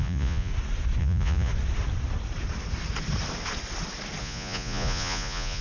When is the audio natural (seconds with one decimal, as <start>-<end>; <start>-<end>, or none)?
0.5-1.0; 1.5-4.2